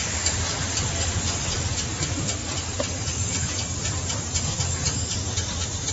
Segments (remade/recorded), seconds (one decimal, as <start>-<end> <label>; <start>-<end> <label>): 0.0-5.9 recorded